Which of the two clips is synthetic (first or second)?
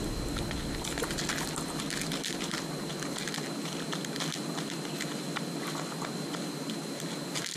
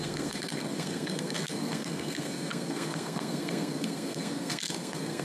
second